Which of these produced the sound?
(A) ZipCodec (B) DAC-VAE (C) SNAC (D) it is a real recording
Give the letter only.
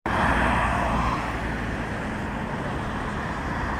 D